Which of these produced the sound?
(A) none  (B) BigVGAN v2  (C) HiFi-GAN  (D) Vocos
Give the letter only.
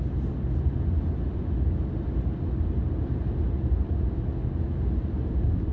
A